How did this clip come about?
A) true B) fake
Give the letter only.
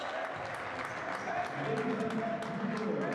A